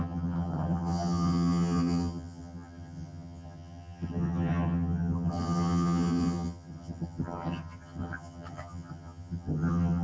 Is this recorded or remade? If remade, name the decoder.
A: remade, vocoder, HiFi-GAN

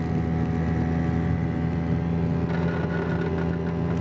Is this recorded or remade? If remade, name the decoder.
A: recorded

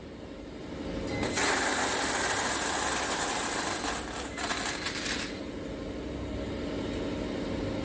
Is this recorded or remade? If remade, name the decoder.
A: recorded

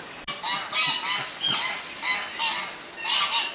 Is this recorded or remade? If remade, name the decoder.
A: recorded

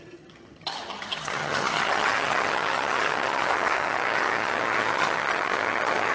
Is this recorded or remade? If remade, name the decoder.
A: remade, vocoder, HiFi-GAN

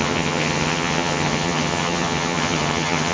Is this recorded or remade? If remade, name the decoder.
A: remade, vocoder, HiFi-GAN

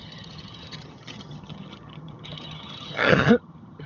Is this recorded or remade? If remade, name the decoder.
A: remade, vocoder, HiFi-GAN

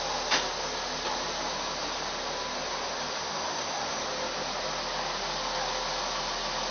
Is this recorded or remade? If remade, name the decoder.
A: recorded